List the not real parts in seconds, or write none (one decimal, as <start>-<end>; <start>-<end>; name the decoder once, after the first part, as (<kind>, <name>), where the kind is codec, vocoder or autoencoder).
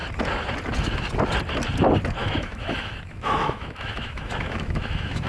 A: 2.2-5.3 (autoencoder, DAC-VAE)